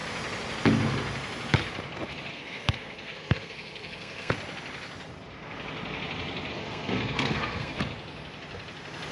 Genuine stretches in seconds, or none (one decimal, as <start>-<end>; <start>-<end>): 0.0-2.3; 4.3-6.5; 7.8-9.1